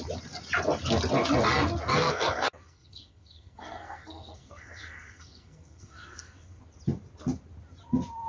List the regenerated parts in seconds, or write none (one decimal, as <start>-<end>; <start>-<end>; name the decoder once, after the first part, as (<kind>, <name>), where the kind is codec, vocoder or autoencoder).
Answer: 2.0-6.6 (codec, SNAC)